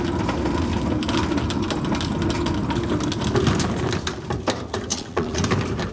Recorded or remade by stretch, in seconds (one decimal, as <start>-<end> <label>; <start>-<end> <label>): 0.0-4.9 recorded; 4.9-5.4 remade; 5.4-5.9 recorded